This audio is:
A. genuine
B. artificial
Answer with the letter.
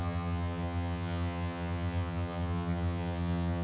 B